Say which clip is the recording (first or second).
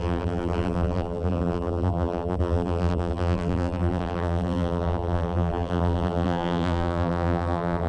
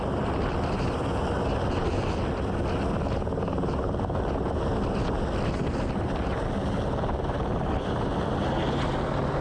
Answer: second